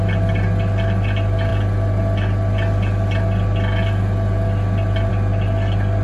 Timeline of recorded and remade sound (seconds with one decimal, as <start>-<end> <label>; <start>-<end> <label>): 0.0-6.0 recorded